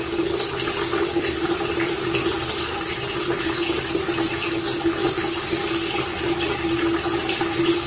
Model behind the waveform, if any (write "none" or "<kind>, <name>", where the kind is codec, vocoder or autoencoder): none